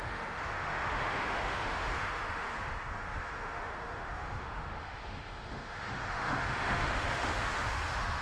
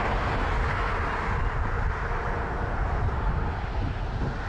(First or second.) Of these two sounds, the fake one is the first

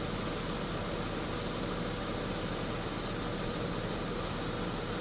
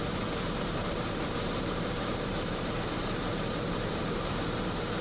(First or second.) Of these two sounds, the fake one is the second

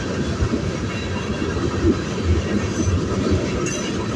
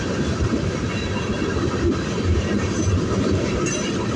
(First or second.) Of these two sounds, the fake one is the second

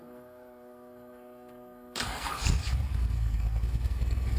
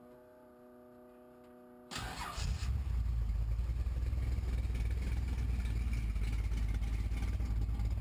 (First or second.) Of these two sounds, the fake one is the first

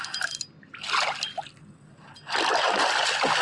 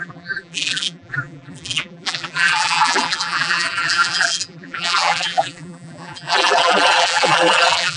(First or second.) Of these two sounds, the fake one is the second